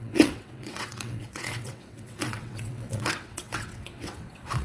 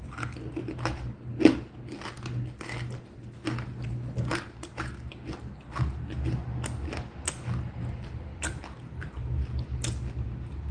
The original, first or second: second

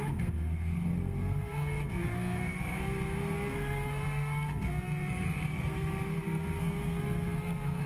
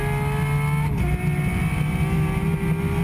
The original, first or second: second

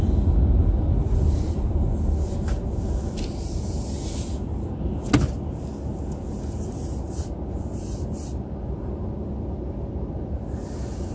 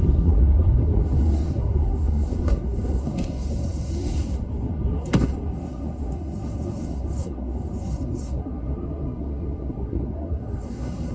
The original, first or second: first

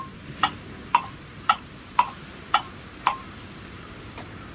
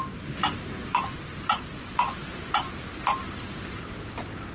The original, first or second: second